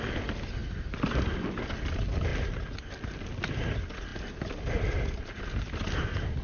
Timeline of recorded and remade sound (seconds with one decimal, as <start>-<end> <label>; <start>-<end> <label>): 0.0-6.4 recorded